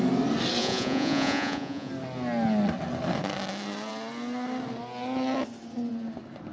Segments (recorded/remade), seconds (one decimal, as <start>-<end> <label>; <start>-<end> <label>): 0.0-0.6 recorded; 0.6-1.9 remade; 1.9-6.5 recorded

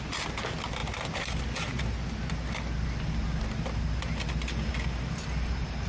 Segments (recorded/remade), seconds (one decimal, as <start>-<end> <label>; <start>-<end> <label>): 0.0-5.9 recorded

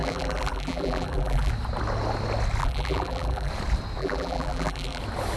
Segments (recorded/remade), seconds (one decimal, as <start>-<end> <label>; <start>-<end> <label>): 0.0-1.5 remade; 1.5-2.6 recorded; 2.6-3.5 remade; 3.5-4.0 recorded; 4.0-5.0 remade; 5.0-5.4 recorded